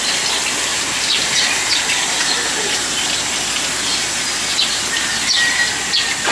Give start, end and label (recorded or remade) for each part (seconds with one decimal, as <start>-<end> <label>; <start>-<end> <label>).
0.0-0.7 recorded; 0.7-3.0 remade; 3.0-6.3 recorded